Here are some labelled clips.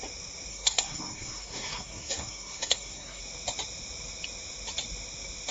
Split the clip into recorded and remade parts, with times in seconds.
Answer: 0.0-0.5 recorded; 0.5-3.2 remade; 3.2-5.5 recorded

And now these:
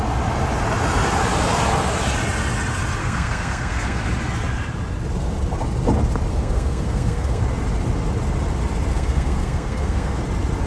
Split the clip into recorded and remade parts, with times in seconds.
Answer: 0.0-3.0 recorded; 3.0-4.1 remade; 4.1-6.3 recorded; 6.3-7.4 remade; 7.4-8.9 recorded; 8.9-10.2 remade; 10.2-10.7 recorded

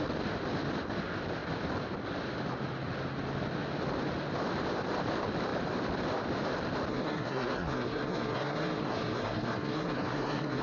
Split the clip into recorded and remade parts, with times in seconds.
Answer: 0.0-6.9 recorded; 6.9-10.6 remade

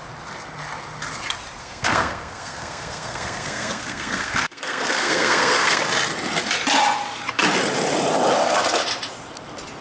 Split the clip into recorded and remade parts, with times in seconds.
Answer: 0.0-1.6 recorded; 1.6-5.8 remade; 5.8-9.8 recorded

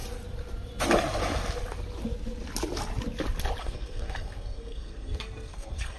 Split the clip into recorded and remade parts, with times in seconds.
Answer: 0.0-3.6 recorded; 3.6-6.0 remade

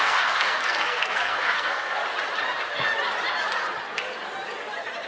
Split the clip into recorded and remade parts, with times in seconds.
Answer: 0.0-2.0 remade; 2.0-5.1 recorded

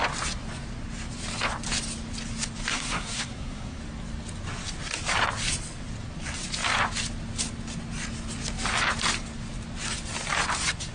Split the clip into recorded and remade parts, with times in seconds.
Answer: 0.0-2.7 recorded; 2.7-3.8 remade; 3.8-10.9 recorded

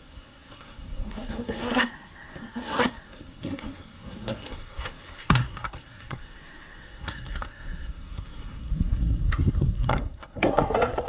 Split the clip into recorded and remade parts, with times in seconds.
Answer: 0.0-11.1 remade